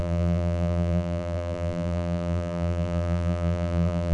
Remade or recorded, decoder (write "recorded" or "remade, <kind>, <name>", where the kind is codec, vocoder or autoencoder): remade, vocoder, BigVGAN v2